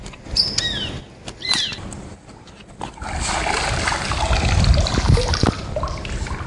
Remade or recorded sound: recorded